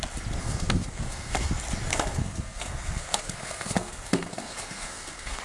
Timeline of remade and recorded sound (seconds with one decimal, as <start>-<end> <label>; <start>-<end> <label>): 0.0-0.4 recorded; 0.4-1.5 remade; 1.5-1.9 recorded; 1.9-5.4 remade